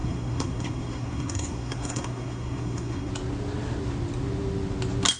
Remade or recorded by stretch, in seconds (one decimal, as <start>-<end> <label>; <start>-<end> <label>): 0.0-3.1 remade; 3.1-5.2 recorded